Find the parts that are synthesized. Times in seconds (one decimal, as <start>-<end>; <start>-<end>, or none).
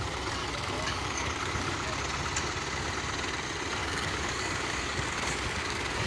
0.4-2.0; 3.8-6.1